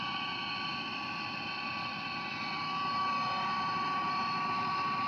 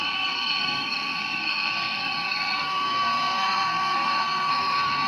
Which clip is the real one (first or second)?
first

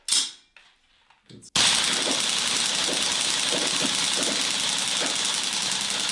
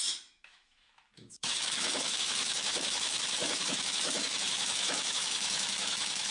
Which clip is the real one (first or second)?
first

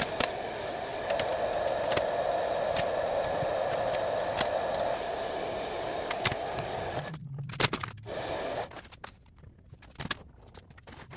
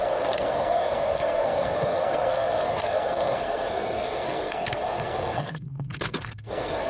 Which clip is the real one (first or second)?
first